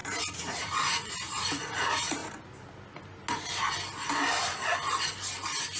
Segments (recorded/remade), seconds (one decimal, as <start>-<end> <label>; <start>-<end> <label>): 0.0-2.2 remade; 2.2-5.8 recorded